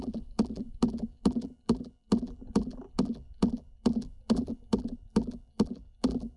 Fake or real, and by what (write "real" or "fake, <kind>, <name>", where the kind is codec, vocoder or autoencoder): fake, vocoder, BigVGAN v2